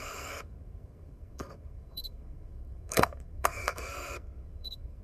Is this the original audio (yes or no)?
no